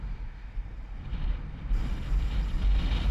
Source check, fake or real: fake